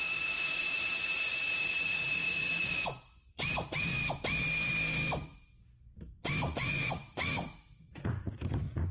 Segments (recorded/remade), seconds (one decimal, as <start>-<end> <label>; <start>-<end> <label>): 0.0-3.9 remade; 3.9-6.4 recorded; 6.4-8.9 remade